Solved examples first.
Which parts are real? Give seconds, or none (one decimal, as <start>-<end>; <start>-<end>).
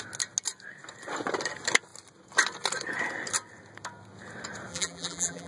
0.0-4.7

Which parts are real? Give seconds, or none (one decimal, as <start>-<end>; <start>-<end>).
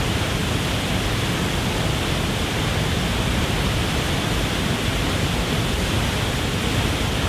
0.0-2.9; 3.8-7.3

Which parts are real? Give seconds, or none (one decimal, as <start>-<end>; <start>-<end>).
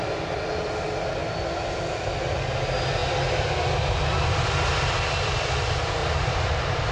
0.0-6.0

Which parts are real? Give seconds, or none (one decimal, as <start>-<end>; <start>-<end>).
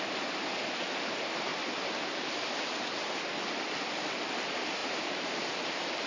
1.5-4.2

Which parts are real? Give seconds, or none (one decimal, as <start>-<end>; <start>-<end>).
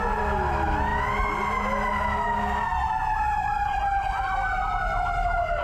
0.0-3.7; 4.2-5.6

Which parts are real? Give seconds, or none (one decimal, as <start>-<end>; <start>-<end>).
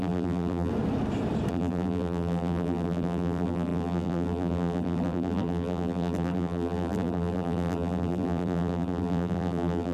0.7-1.5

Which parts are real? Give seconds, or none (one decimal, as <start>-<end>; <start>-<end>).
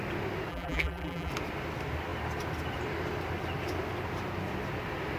0.0-0.5; 1.3-5.2